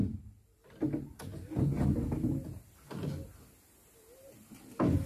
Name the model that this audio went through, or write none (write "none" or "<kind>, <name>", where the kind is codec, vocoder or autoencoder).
none